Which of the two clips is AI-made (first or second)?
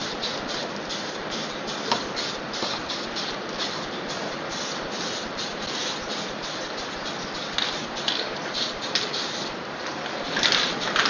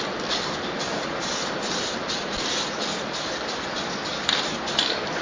first